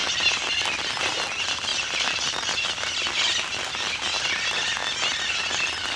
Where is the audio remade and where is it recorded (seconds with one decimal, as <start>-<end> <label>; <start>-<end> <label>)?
0.0-1.7 recorded; 1.7-2.7 remade; 2.7-6.0 recorded